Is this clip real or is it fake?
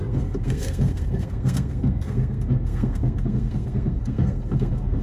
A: fake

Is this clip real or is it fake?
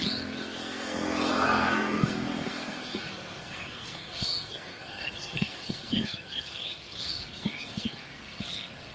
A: fake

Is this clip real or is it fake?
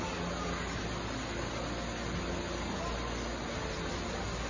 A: real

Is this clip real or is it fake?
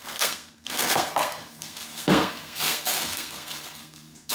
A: fake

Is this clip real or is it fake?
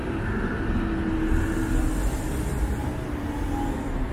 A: real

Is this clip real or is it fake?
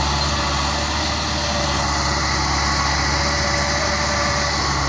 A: real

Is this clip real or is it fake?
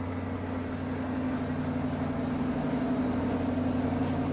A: real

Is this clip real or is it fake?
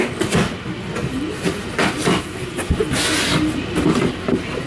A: real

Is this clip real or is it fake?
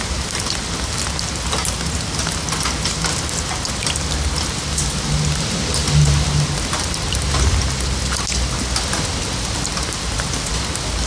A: real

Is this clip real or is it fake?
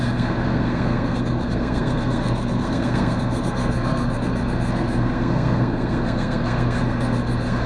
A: fake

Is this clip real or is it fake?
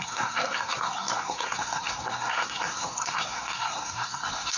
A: fake